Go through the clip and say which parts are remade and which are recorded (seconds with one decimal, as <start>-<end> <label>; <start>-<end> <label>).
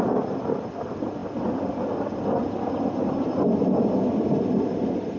0.0-5.2 recorded